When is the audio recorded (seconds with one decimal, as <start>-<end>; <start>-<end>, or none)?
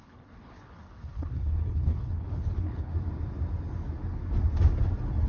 2.9-5.3